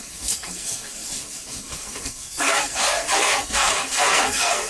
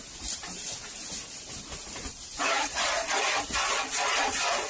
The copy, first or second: first